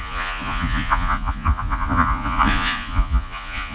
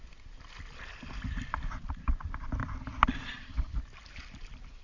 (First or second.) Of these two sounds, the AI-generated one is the first